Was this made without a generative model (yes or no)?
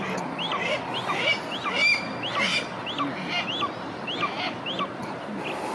yes